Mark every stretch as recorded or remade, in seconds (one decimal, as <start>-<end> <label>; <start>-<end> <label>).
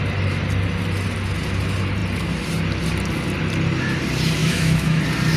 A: 0.0-4.4 recorded; 4.4-5.0 remade; 5.0-5.4 recorded